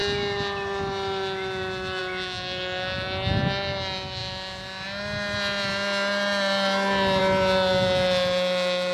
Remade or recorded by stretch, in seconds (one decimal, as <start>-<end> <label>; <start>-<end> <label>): 0.0-8.9 recorded